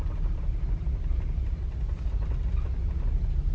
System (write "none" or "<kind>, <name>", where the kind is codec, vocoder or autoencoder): none